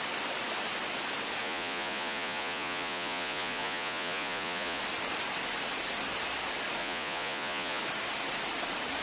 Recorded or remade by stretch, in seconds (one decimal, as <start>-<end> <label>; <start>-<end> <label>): 0.0-1.4 recorded; 1.4-4.8 remade; 4.8-6.8 recorded; 6.8-7.8 remade; 7.8-9.0 recorded